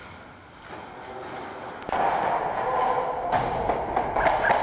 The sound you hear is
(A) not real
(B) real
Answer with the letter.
B